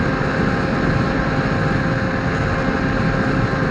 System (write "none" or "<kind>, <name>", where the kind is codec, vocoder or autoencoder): none